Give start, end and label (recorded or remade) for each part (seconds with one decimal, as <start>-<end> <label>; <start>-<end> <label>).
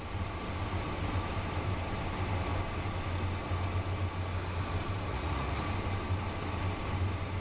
0.0-5.1 recorded; 5.1-5.6 remade; 5.6-7.4 recorded